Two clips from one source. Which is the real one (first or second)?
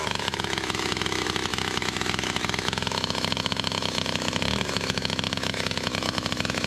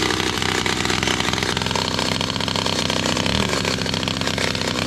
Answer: second